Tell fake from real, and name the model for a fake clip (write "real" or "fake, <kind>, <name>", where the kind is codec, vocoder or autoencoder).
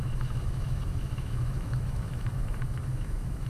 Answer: fake, autoencoder, DAC-VAE